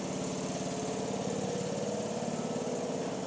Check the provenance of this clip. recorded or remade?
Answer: recorded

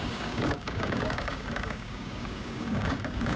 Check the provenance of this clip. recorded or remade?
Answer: remade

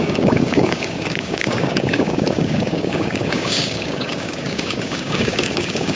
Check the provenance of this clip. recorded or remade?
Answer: remade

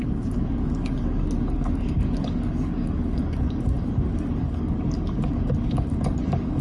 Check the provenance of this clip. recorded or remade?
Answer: remade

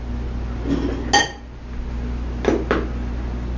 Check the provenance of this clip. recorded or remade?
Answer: recorded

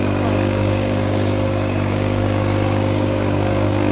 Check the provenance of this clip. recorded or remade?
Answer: remade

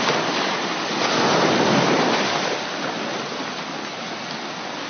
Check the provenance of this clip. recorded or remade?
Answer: recorded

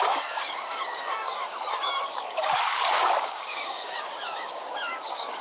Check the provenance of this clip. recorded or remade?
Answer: remade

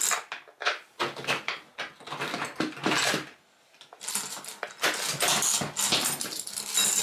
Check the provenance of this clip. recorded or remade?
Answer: recorded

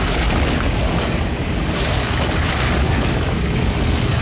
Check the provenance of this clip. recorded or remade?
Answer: remade